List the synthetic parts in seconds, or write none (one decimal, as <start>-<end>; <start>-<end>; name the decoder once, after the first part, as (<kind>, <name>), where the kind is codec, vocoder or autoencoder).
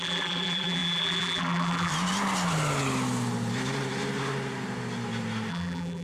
0.0-1.9 (vocoder, BigVGAN v2); 5.5-6.0